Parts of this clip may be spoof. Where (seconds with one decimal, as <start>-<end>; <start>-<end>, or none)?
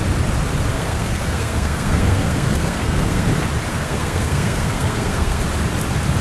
0.7-3.3; 3.7-5.4